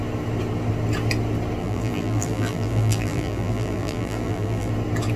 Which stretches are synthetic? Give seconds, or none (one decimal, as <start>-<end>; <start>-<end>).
1.6-4.7